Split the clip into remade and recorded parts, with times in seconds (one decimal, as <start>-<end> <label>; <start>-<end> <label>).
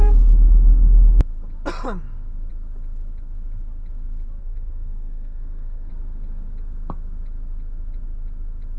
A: 0.0-4.4 recorded; 4.4-5.9 remade; 5.9-8.8 recorded